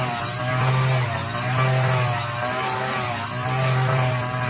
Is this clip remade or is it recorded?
recorded